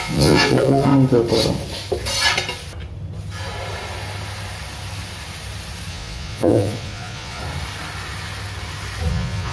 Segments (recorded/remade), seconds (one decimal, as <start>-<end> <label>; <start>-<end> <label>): 0.0-0.9 remade; 0.9-5.9 recorded; 5.9-7.4 remade; 7.4-9.1 recorded; 9.1-9.5 remade